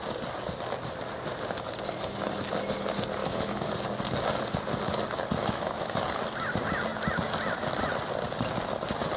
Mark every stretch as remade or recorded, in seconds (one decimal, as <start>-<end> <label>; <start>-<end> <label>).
0.0-3.2 recorded; 3.2-3.7 remade; 3.7-5.4 recorded; 5.4-6.0 remade; 6.0-9.2 recorded